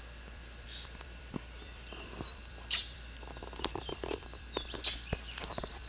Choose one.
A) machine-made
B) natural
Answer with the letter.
A